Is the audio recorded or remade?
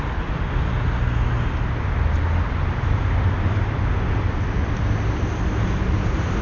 recorded